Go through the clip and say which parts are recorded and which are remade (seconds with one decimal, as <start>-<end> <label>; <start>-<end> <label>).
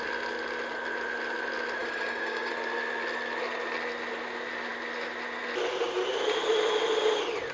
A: 0.0-1.8 recorded; 1.8-2.5 remade; 2.5-7.5 recorded